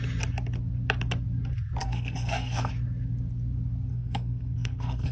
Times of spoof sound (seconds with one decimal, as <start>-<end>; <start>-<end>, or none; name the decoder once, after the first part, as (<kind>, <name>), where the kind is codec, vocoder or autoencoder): 1.8-2.7 (codec, SNAC); 3.9-5.1